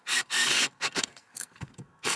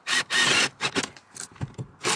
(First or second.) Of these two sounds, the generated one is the first